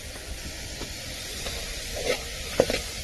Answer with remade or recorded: remade